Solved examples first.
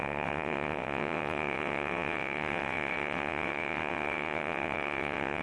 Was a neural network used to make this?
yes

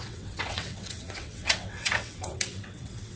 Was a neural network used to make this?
yes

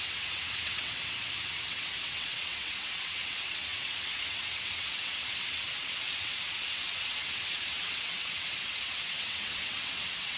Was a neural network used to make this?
yes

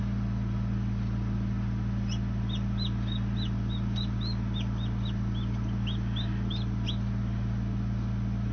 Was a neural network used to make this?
no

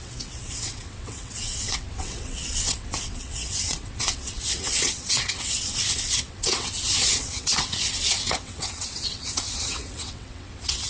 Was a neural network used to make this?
yes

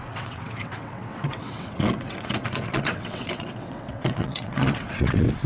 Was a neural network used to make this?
yes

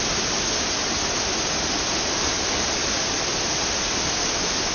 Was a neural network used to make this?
no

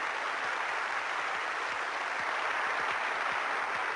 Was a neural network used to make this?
no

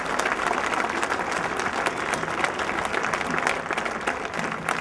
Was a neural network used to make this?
no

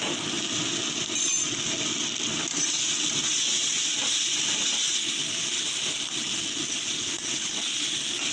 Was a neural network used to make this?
no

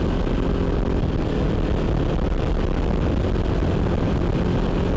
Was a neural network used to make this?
no